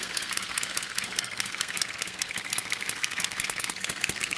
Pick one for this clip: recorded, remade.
remade